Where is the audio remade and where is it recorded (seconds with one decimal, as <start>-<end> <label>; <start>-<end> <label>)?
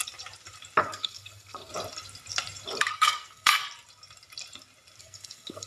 0.0-0.8 recorded; 0.8-1.7 remade; 1.7-2.8 recorded; 2.8-3.6 remade; 3.6-5.0 recorded; 5.0-5.7 remade